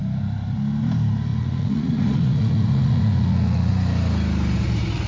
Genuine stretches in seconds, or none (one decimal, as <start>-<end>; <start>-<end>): 0.0-1.3; 3.7-5.1